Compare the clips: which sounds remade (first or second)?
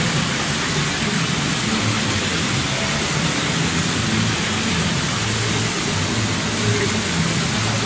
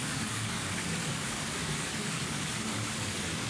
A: second